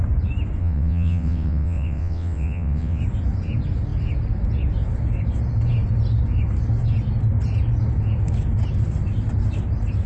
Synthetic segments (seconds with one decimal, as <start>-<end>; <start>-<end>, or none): 0.6-3.0